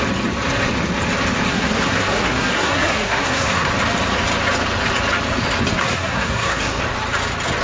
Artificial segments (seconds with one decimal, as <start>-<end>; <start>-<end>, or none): 1.5-3.7; 5.8-6.8